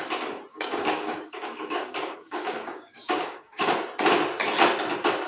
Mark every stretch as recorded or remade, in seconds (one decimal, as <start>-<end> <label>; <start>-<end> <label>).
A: 0.0-0.5 recorded; 0.5-3.7 remade; 3.7-5.3 recorded